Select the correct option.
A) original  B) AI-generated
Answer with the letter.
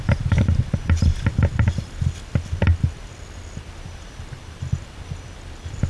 A